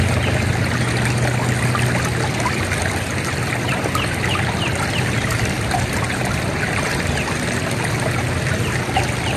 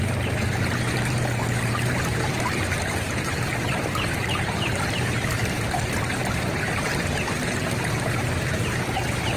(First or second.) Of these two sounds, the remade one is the second